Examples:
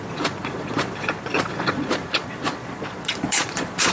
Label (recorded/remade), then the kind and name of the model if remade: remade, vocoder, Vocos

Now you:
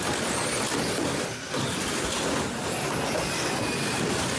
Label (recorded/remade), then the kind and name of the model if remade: recorded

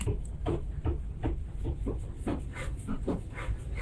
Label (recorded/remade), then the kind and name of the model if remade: recorded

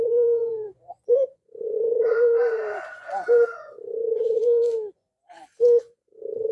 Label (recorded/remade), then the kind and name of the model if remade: remade, vocoder, Vocos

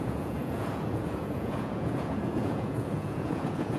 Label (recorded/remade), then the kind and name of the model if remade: remade, vocoder, Vocos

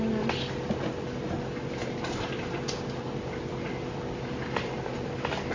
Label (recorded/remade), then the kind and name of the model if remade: recorded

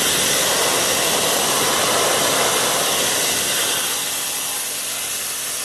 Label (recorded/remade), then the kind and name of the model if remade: recorded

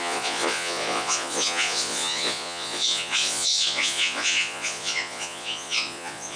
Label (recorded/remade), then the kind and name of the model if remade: remade, vocoder, Vocos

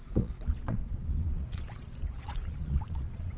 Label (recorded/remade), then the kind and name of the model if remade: remade, vocoder, Vocos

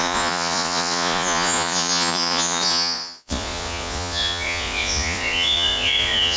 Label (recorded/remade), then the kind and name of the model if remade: remade, vocoder, Vocos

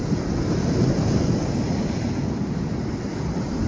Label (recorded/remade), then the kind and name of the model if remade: recorded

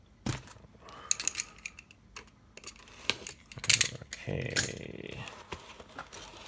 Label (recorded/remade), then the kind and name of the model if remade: recorded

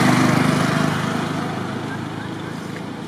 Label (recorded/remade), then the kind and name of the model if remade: recorded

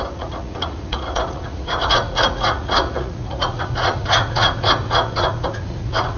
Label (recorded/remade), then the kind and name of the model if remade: remade, vocoder, Vocos